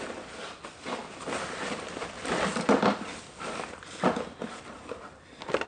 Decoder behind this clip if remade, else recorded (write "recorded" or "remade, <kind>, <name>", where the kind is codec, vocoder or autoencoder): recorded